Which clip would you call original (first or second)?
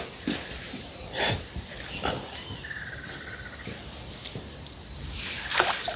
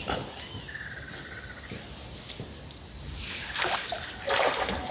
second